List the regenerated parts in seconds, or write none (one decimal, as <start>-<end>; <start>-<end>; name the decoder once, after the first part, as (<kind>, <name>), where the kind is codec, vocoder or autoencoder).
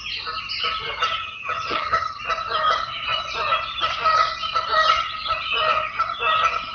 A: 1.2-2.2 (vocoder, HiFi-GAN)